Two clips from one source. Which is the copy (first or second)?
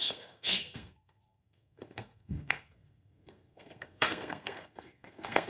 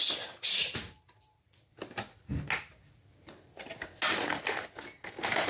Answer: first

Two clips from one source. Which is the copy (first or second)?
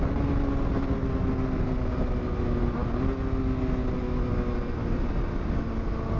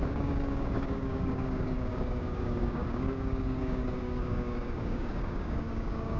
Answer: second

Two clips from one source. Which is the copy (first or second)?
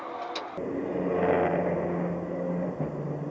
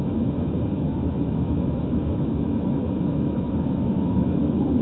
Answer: second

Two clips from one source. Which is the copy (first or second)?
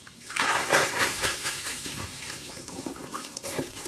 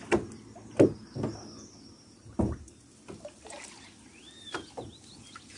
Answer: first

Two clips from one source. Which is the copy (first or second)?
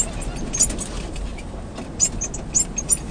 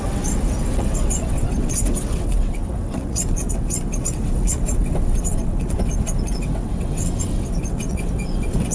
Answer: second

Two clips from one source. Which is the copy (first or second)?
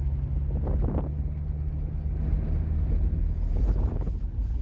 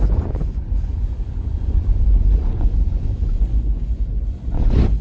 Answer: second